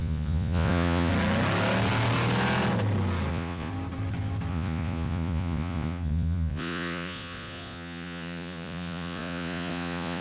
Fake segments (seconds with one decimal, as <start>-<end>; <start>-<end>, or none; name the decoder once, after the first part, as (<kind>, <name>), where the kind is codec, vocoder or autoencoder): 0.0-1.1 (vocoder, Vocos); 3.3-3.7; 4.5-10.2